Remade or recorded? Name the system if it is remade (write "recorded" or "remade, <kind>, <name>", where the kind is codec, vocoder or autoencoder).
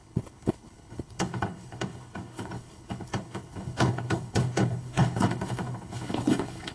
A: remade, codec, HILCodec